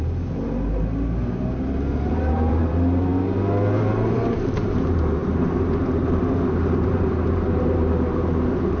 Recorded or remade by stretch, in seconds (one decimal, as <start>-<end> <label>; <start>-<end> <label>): 0.0-2.1 recorded; 2.1-3.1 remade; 3.1-3.8 recorded; 3.8-8.8 remade